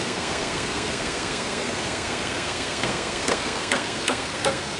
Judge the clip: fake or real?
fake